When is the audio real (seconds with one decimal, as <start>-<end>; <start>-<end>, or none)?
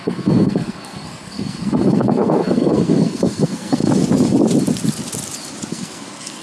3.8-5.7